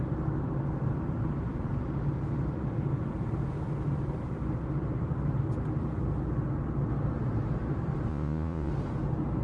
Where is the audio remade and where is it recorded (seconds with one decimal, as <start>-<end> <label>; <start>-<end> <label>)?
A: 0.0-8.1 recorded; 8.1-8.7 remade; 8.7-9.4 recorded